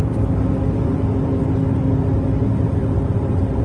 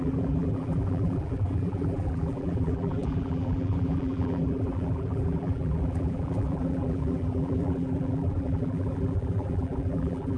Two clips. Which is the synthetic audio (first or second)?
second